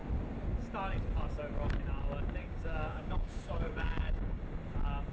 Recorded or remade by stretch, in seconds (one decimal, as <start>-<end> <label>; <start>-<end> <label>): 0.0-2.4 recorded; 2.4-4.4 remade; 4.4-5.1 recorded